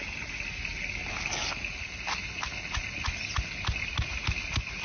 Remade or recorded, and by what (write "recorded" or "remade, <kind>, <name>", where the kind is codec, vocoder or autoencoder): recorded